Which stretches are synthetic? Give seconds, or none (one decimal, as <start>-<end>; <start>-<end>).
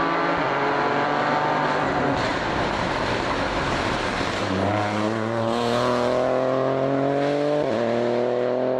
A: 2.3-4.1